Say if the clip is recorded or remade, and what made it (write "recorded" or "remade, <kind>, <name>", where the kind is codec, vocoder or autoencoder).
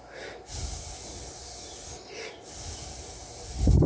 recorded